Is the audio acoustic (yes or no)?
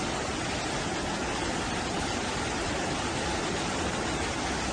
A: yes